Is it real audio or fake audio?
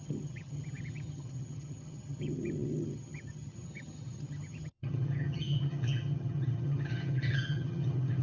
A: fake